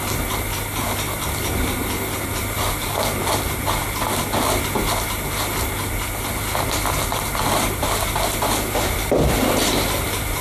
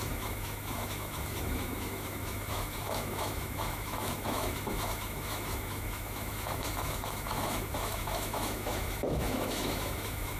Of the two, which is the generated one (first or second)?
second